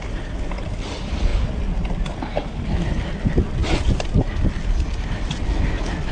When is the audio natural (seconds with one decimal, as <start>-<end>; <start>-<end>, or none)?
0.0-6.1